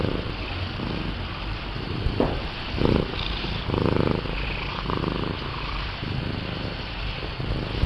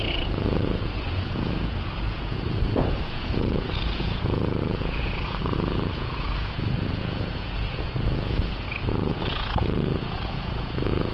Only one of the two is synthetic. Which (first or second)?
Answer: second